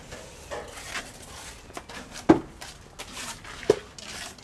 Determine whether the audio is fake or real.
real